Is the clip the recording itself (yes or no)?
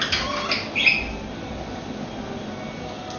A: yes